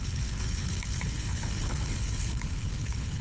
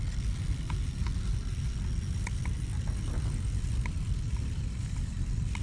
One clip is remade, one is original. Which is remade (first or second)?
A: first